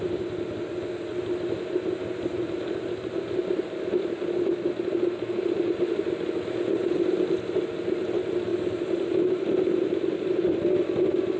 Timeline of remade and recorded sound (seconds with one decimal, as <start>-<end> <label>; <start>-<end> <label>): 0.0-11.4 recorded